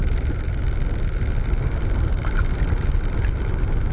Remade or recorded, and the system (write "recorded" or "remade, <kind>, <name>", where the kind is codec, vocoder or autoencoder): recorded